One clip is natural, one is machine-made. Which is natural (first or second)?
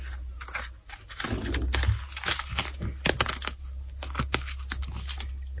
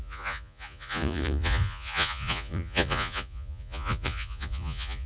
first